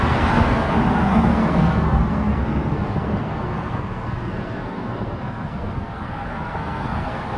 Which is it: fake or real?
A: fake